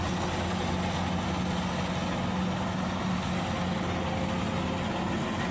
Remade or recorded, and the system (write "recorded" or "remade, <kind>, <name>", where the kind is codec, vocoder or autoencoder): recorded